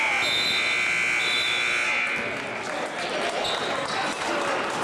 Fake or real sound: real